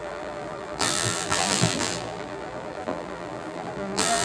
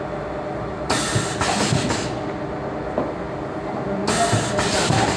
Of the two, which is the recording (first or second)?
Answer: second